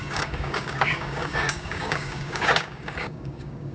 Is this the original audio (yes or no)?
no